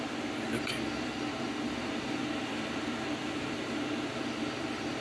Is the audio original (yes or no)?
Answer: yes